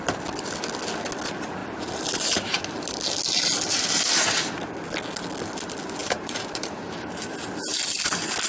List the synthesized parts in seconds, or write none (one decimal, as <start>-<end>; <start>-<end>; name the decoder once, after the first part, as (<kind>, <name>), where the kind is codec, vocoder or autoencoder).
6.0-7.2 (vocoder, BigVGAN v2)

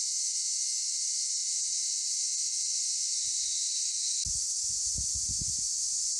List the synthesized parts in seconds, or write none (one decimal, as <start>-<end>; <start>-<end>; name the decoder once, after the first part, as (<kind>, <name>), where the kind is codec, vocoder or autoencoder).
none

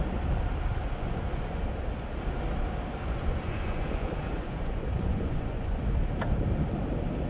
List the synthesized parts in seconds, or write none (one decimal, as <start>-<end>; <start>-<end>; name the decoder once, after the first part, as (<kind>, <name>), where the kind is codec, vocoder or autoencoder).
0.8-1.6 (vocoder, Vocos); 3.0-5.8

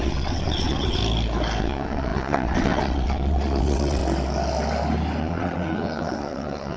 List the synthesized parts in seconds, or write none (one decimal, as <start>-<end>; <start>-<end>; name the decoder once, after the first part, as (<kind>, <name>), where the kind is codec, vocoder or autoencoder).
0.0-1.0 (vocoder, WaveNeXt); 1.6-4.0; 5.2-6.8

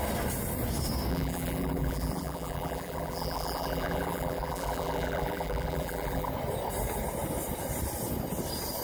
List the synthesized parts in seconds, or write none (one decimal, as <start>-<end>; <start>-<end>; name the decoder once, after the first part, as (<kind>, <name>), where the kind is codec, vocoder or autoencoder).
1.1-6.3 (vocoder, BigVGAN v2)

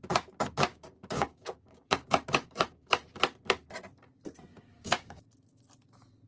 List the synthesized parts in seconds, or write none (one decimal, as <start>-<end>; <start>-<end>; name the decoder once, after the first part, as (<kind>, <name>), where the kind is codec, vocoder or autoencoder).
0.7-3.2 (codec, DAC); 4.5-5.2

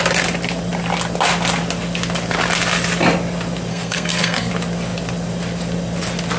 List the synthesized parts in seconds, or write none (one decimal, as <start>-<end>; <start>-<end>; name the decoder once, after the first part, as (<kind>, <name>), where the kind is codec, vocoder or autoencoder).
3.7-4.5 (codec, SNAC)